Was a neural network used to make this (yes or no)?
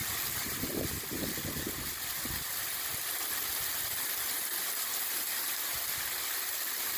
no